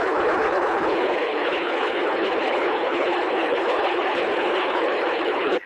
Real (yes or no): no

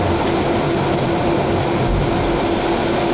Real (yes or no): yes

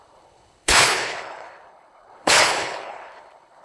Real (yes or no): no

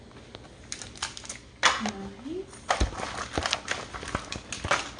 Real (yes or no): yes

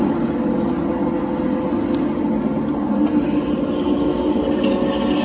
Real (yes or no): yes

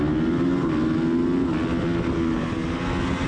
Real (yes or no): yes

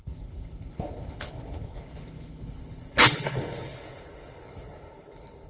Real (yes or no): no